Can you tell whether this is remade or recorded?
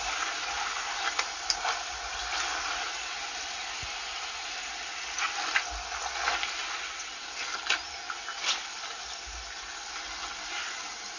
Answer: recorded